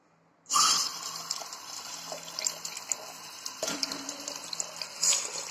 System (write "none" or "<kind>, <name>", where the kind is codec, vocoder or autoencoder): none